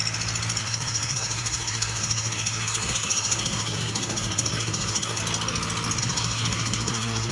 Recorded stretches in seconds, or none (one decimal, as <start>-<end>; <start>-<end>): 0.0-0.6; 5.2-6.0